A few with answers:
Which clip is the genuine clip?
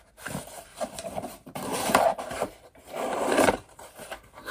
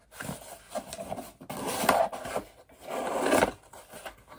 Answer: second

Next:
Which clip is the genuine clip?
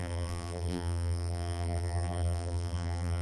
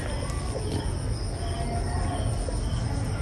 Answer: second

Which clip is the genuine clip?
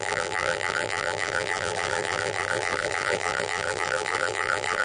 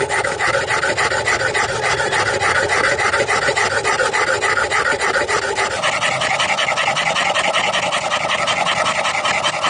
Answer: second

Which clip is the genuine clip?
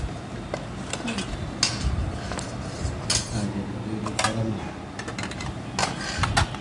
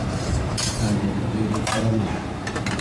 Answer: first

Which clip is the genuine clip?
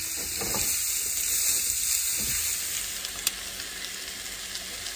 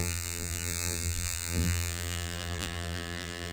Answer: first